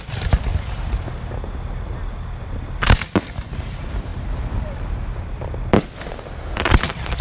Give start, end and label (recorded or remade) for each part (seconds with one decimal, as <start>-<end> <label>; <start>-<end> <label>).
0.0-0.5 recorded; 0.5-1.2 remade; 1.2-7.2 recorded